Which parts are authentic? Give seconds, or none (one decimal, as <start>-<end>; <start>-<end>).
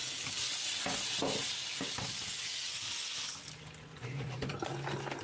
0.0-3.9; 4.5-5.2